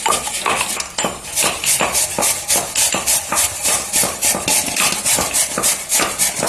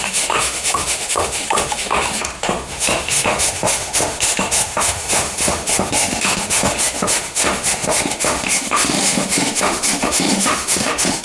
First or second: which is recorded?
first